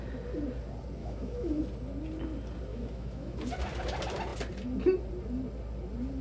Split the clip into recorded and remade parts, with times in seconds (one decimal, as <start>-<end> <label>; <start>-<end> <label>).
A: 0.0-1.0 recorded; 1.0-1.6 remade; 1.6-2.7 recorded; 2.7-3.4 remade; 3.4-6.2 recorded